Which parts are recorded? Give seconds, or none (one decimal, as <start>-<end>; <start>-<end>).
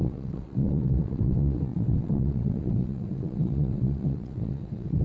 none